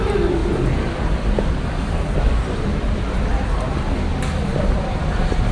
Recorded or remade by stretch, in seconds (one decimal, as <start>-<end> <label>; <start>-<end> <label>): 0.0-5.5 recorded